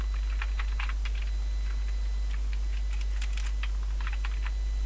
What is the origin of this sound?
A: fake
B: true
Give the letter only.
B